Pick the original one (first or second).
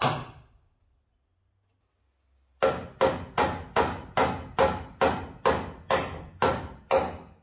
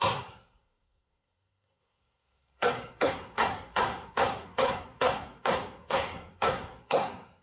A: first